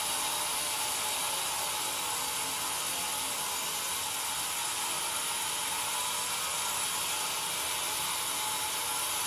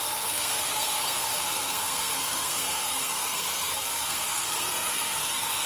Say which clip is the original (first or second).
first